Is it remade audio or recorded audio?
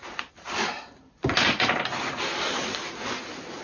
recorded